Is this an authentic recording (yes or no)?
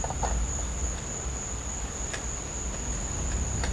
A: yes